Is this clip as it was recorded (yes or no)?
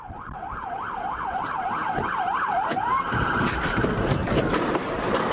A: no